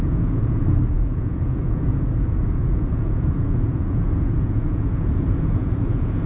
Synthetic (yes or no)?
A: yes